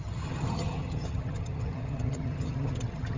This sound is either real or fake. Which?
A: fake